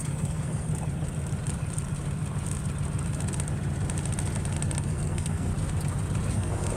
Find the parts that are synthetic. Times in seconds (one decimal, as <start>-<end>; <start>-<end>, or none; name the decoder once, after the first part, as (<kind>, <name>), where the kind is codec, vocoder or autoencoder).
0.0-0.7 (codec, SNAC); 4.8-5.5; 6.3-6.8